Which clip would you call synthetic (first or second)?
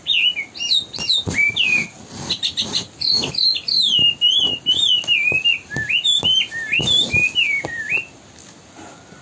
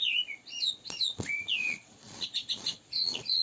second